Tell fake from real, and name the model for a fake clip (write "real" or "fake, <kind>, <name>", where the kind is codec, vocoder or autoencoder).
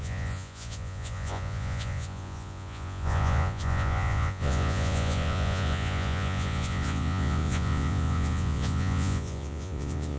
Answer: fake, vocoder, Vocos